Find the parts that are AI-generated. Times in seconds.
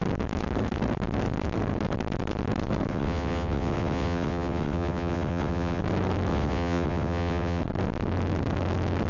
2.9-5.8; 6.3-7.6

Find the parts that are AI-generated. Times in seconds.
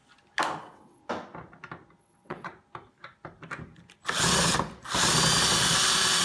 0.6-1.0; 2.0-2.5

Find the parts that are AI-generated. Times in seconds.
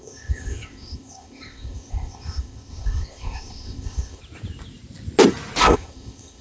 0.0-4.2; 5.6-6.4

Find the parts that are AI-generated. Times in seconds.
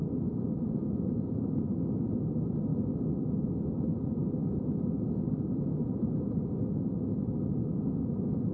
none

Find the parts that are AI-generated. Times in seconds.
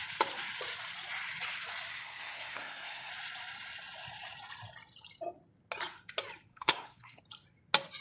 1.9-3.1; 6.5-7.2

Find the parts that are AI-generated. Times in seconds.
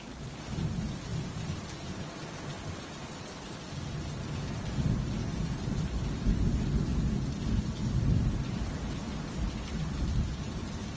none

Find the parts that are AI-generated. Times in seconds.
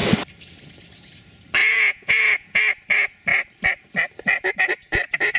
1.6-2.6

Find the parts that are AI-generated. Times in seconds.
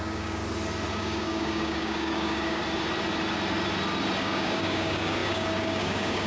0.0-0.4; 0.9-2.6; 4.2-6.3